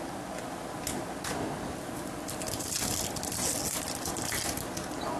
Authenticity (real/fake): real